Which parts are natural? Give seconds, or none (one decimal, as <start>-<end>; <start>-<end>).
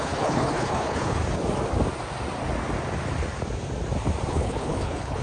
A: 1.2-4.3